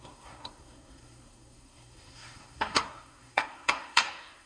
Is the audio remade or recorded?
remade